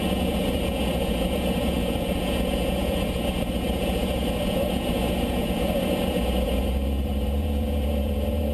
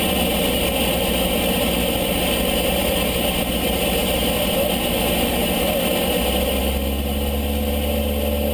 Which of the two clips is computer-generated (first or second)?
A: first